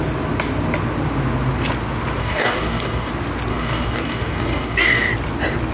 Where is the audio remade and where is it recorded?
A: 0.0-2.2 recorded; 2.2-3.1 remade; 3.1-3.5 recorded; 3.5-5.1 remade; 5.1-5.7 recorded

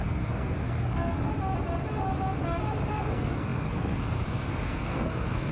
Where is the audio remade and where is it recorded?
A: 0.0-1.3 remade; 1.3-2.9 recorded; 2.9-5.5 remade

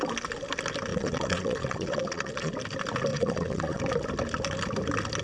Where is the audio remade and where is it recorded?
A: 0.0-0.9 recorded; 0.9-2.5 remade; 2.5-3.1 recorded; 3.1-3.8 remade; 3.8-5.2 recorded

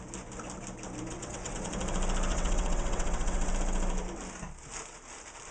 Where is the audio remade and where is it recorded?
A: 0.0-1.1 recorded; 1.1-1.7 remade; 1.7-2.3 recorded; 2.3-3.5 remade; 3.5-5.5 recorded

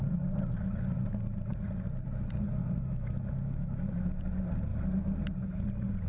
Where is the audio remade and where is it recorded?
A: 0.0-2.6 recorded; 2.6-4.0 remade; 4.0-6.1 recorded

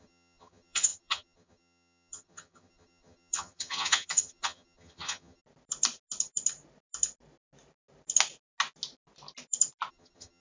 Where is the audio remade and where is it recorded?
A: 0.0-5.4 remade; 5.4-9.9 recorded; 9.9-10.4 remade

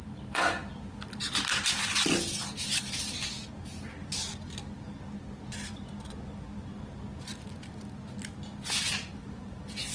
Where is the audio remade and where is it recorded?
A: 0.0-0.6 remade; 0.6-3.6 recorded; 3.6-4.3 remade; 4.3-8.8 recorded; 8.8-9.9 remade

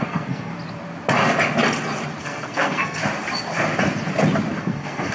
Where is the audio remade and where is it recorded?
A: 0.0-0.5 remade; 0.5-2.2 recorded; 2.2-3.0 remade; 3.0-4.6 recorded; 4.6-5.1 remade